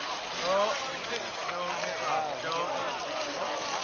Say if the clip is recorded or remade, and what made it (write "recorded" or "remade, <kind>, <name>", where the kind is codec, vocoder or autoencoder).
recorded